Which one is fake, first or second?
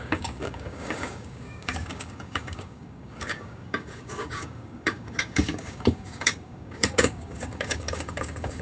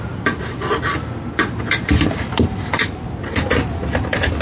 first